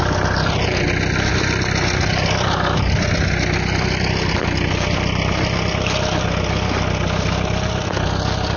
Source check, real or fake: real